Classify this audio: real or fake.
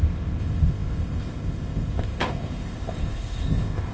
fake